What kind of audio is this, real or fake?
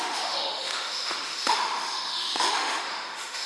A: fake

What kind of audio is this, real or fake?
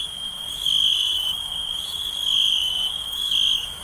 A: fake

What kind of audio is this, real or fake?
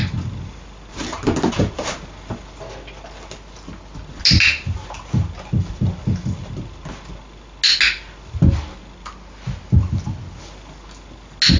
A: real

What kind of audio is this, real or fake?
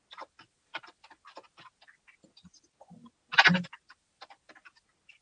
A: real